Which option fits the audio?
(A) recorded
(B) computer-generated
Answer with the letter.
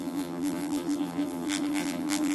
B